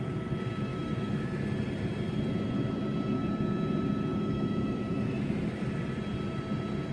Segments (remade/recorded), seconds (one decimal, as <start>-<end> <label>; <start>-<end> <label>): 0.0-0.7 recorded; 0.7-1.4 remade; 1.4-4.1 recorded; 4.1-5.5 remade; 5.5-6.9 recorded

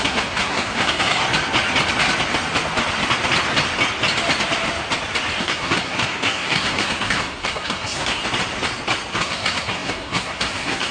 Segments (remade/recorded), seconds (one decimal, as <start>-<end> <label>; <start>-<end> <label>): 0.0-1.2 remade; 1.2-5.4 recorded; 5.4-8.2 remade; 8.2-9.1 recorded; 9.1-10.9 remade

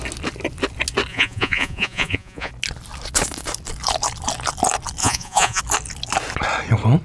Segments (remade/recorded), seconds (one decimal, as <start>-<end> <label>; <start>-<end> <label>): 0.0-1.1 recorded; 1.1-2.5 remade; 2.5-5.0 recorded; 5.0-5.6 remade; 5.6-7.0 recorded